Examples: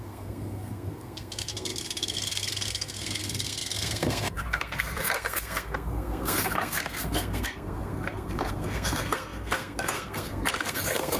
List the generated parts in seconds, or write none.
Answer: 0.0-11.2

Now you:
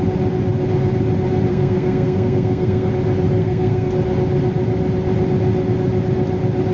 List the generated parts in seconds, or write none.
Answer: 1.5-2.9; 3.4-3.9

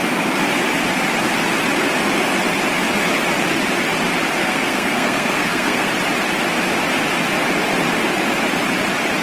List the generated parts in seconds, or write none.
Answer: 4.4-5.9

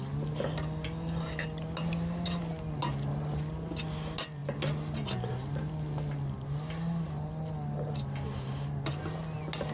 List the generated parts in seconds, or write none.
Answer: none

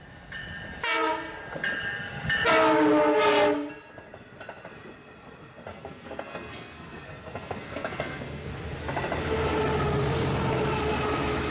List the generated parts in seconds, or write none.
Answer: 5.7-8.5

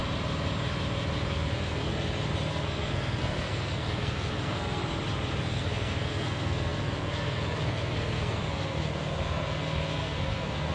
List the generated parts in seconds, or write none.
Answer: 1.3-1.9; 2.5-4.8; 5.4-10.7